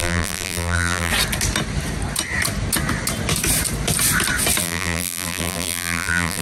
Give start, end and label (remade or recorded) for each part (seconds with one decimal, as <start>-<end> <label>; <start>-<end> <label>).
0.0-1.1 remade; 1.1-4.6 recorded; 4.6-6.4 remade